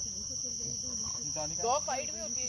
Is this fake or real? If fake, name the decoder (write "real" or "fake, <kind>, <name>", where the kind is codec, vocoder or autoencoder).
real